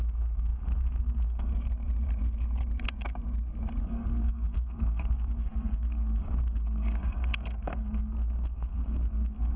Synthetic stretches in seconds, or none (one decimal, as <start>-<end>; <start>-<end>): 0.0-1.5; 3.8-9.6